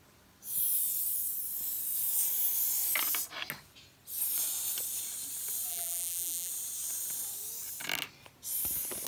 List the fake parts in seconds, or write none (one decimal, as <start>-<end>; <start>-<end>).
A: 5.7-6.5

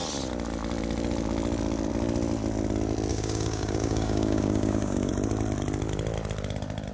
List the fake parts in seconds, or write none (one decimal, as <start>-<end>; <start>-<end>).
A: 3.1-5.1

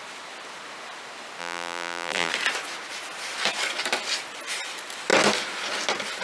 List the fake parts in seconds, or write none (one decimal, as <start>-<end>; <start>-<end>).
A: 1.4-2.3

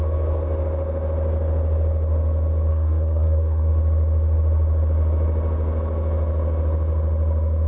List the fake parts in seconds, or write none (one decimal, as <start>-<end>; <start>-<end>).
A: 2.7-3.7

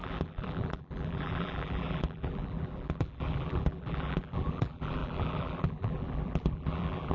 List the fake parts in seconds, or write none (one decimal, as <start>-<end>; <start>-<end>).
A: 0.0-7.1